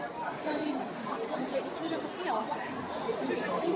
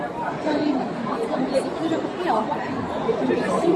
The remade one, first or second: second